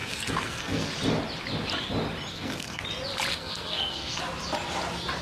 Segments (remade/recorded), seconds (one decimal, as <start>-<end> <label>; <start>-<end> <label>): 0.0-0.9 remade; 0.9-2.3 recorded; 2.3-2.8 remade; 2.8-3.3 recorded; 3.3-4.2 remade; 4.2-5.2 recorded